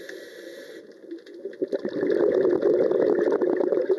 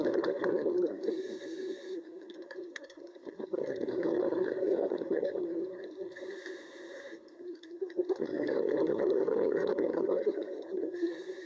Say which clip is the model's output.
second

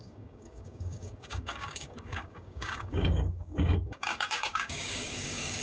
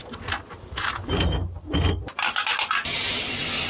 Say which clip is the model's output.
first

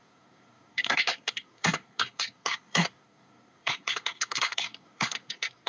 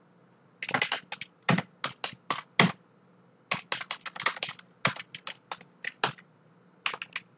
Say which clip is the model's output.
first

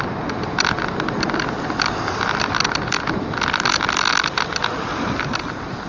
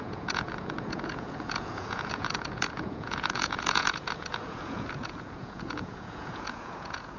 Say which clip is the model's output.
second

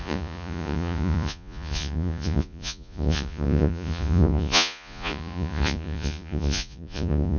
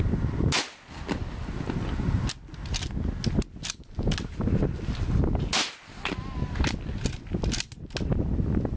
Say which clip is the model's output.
first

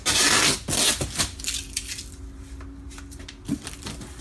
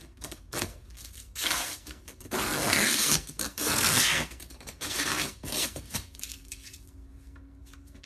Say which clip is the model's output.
second